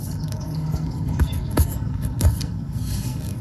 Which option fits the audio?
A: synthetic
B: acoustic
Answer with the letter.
A